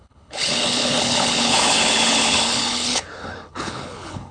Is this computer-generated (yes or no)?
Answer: yes